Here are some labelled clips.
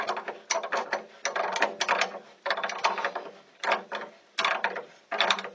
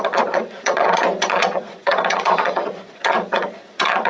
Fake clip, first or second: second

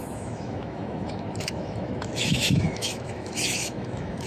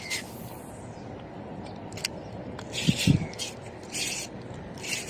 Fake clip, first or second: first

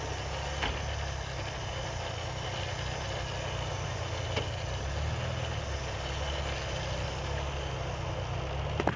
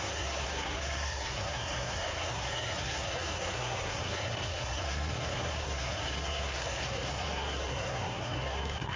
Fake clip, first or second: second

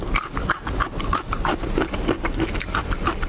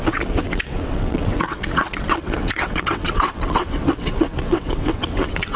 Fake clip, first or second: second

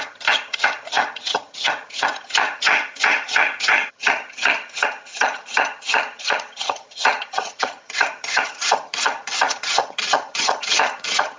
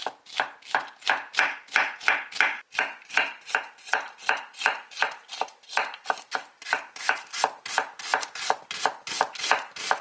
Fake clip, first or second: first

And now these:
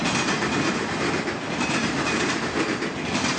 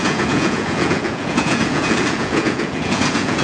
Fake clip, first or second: second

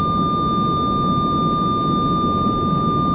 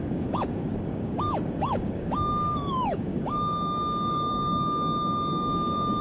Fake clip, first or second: second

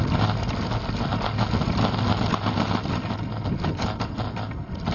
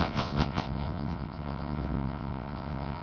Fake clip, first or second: second